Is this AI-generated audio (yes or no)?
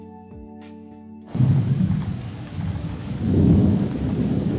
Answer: yes